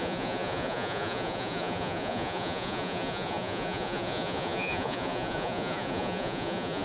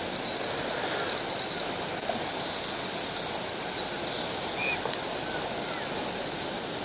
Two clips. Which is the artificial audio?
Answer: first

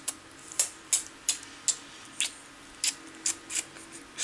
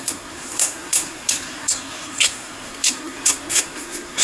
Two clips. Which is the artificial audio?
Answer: second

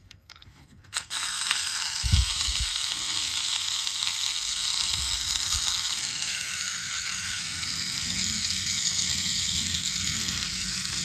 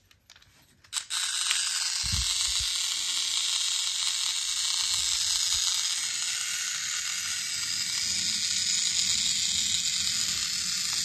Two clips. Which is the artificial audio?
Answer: first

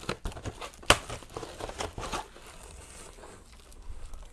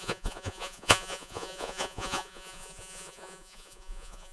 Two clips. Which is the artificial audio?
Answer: second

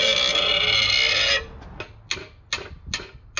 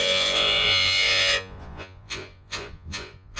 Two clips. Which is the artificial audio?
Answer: second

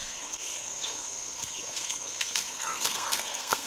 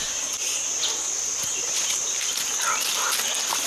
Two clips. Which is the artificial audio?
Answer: first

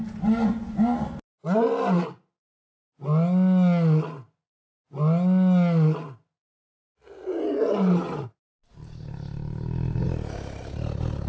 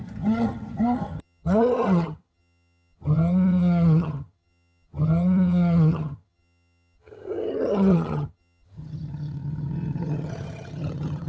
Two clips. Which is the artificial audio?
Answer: second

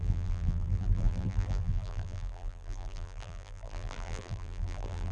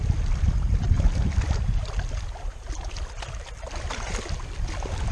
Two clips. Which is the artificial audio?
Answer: first